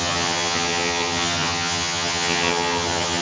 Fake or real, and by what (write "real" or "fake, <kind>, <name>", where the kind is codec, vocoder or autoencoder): fake, vocoder, HiFi-GAN